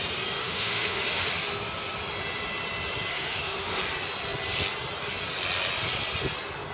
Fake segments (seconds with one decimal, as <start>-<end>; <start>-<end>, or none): 0.4-1.3; 3.1-3.8